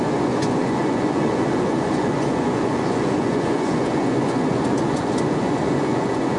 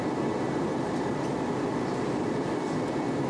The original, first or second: second